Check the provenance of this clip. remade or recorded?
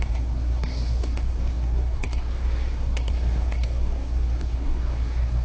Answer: remade